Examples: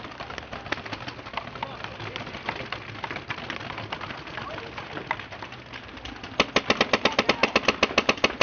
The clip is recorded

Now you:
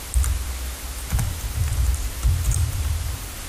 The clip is remade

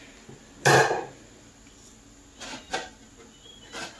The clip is recorded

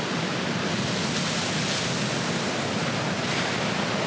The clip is recorded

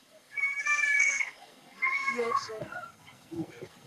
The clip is remade